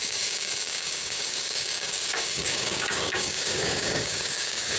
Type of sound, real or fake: fake